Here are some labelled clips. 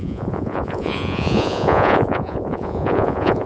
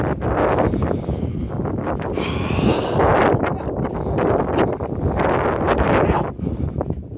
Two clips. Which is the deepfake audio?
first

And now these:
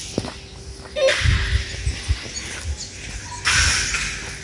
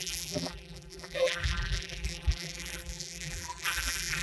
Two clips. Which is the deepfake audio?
second